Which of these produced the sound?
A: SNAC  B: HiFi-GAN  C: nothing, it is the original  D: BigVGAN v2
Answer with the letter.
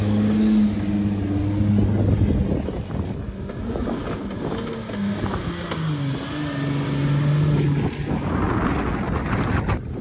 C